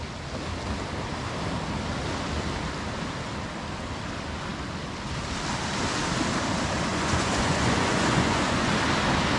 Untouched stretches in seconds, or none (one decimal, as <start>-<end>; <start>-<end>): 0.0-6.9; 8.7-9.4